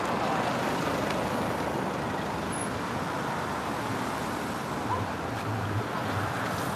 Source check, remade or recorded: recorded